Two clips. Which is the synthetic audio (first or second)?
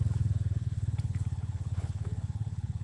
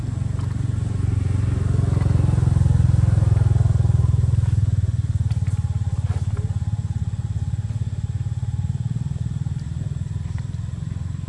first